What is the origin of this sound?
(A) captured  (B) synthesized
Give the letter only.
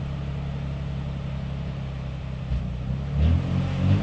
A